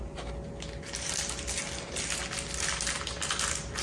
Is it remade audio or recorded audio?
recorded